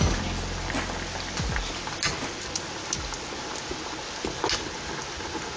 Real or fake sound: real